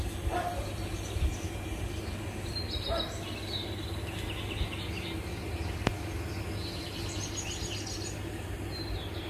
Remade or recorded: recorded